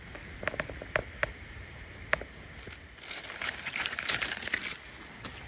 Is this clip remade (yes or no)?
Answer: no